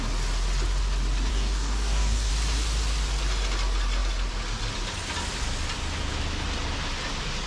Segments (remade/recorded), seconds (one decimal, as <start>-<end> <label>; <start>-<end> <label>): 0.0-1.3 recorded; 1.3-2.3 remade; 2.3-7.5 recorded